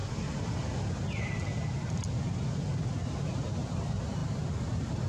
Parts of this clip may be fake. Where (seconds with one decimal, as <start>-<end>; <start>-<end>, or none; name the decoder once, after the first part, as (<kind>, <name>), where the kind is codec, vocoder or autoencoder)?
0.0-1.9 (vocoder, BigVGAN v2)